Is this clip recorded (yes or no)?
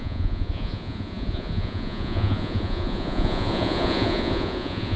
no